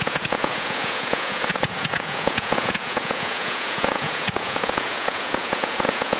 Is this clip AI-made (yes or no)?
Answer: yes